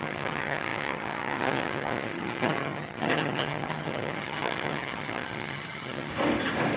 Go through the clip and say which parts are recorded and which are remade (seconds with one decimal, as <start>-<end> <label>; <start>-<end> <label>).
0.0-6.1 remade; 6.1-6.8 recorded